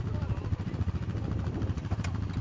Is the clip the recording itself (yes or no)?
no